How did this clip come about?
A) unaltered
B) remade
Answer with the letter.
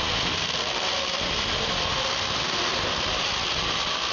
B